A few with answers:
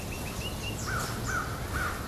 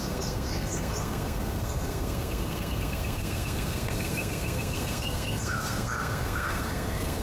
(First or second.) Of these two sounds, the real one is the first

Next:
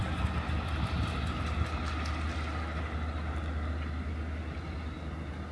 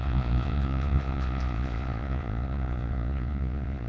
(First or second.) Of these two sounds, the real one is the first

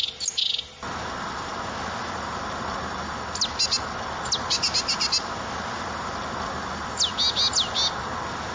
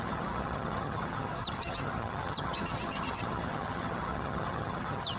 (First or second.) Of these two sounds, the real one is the first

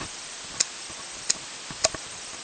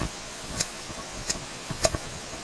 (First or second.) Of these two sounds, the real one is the first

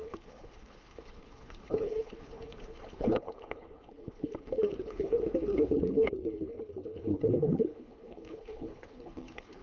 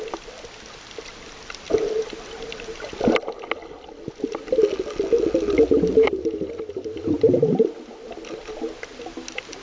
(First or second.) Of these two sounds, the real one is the second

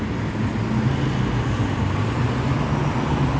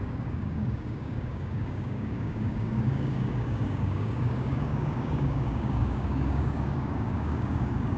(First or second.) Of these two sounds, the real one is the first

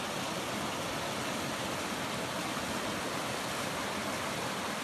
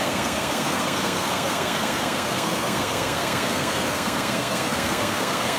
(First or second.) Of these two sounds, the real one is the first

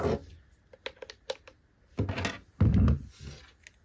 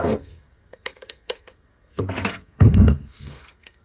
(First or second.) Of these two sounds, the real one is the first